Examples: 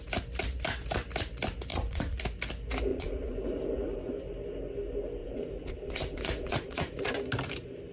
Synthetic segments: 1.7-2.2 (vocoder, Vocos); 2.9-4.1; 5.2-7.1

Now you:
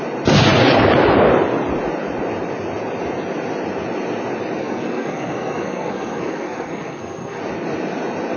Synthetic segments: 4.6-7.4 (codec, SNAC)